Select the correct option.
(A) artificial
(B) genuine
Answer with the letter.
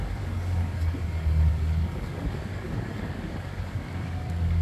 A